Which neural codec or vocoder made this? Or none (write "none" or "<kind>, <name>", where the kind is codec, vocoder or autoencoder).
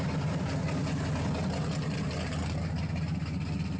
none